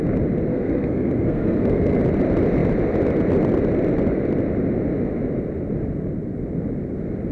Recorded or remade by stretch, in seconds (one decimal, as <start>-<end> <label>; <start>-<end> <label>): 0.0-0.5 recorded; 0.5-2.0 remade; 2.0-7.3 recorded